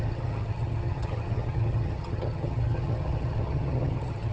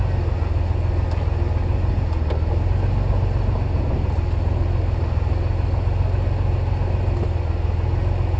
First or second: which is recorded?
second